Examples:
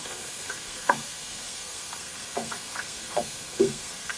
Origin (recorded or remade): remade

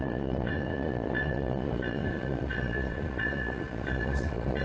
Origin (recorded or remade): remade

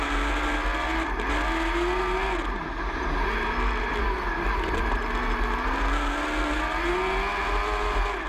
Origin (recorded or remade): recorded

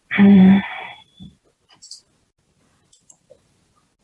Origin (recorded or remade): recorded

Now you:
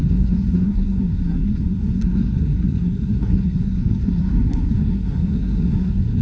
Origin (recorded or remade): remade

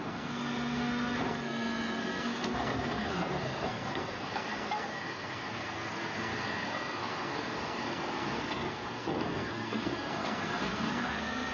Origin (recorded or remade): remade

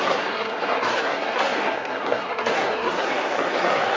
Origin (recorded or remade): remade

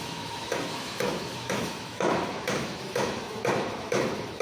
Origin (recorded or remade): remade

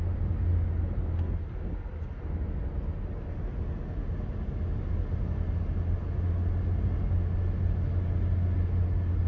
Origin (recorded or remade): recorded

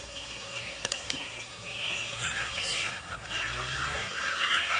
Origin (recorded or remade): remade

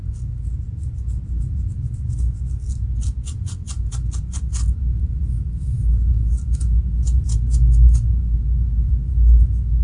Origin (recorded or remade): recorded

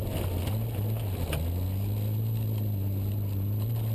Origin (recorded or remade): recorded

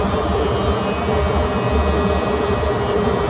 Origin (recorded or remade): recorded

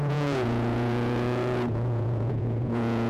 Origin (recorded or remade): remade